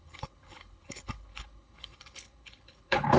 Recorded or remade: remade